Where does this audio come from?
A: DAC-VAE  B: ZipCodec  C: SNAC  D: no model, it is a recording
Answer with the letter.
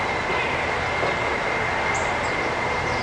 D